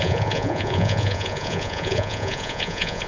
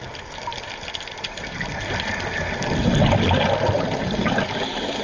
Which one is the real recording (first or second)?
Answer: second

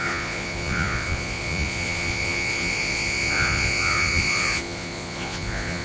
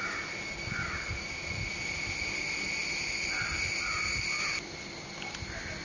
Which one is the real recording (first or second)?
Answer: second